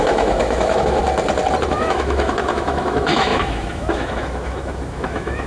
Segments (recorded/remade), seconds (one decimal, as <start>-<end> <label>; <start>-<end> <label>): 0.0-1.0 remade; 1.0-1.7 recorded; 1.7-5.5 remade